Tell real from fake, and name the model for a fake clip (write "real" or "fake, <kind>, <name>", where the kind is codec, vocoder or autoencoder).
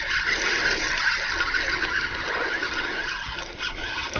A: real